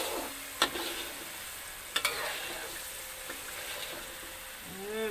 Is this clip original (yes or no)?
yes